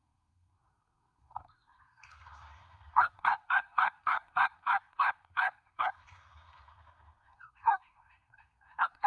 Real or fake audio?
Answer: fake